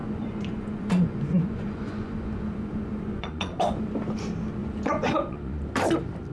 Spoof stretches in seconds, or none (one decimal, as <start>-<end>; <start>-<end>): 0.0-3.8; 4.6-5.6